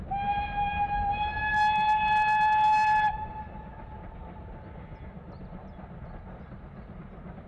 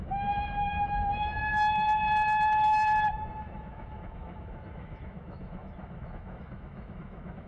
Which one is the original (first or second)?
first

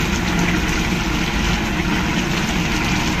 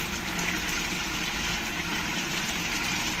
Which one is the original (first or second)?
first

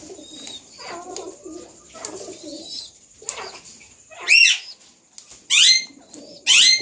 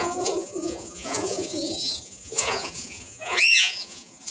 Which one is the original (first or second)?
first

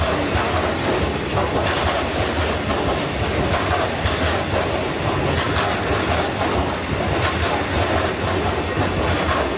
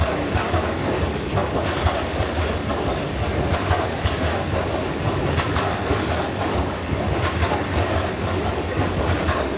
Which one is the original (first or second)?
first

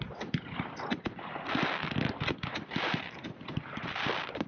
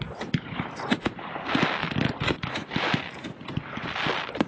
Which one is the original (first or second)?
second